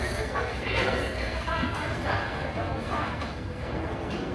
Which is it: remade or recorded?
remade